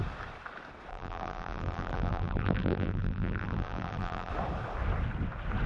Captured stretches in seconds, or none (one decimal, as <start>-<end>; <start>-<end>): 0.0-0.9; 4.3-5.7

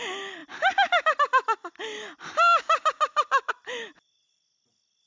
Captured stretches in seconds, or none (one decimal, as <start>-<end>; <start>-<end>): 0.0-5.1

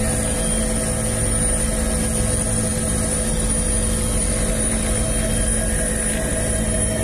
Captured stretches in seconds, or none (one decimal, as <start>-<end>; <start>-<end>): 0.0-7.0

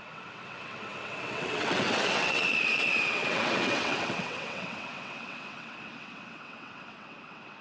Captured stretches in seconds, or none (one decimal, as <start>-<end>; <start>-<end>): none

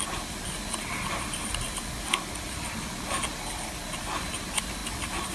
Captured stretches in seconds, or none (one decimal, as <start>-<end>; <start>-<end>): 0.0-5.3

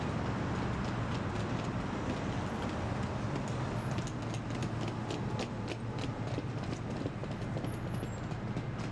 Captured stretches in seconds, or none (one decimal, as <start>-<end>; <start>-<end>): 0.0-8.9